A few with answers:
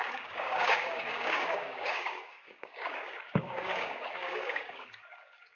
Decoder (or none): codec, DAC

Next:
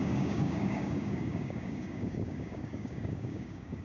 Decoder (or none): codec, DAC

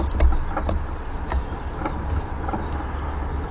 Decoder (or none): none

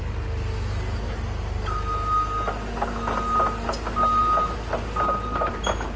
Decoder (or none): none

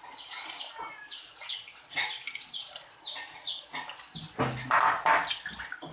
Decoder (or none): none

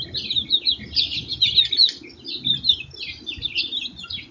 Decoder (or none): none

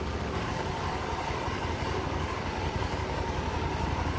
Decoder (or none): codec, DAC